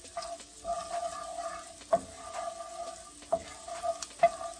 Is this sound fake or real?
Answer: real